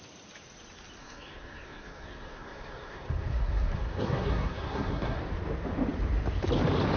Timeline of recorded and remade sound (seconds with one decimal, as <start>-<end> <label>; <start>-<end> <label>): 0.0-1.0 recorded; 1.0-5.2 remade; 5.2-7.0 recorded